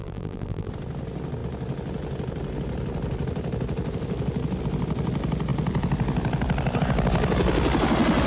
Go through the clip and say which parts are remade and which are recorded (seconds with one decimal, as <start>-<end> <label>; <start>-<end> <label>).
0.0-0.7 remade; 0.7-8.3 recorded